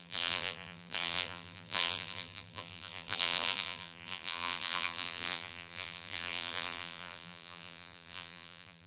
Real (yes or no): no